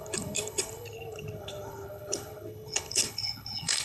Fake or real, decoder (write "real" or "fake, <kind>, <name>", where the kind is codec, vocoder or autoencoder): fake, codec, HILCodec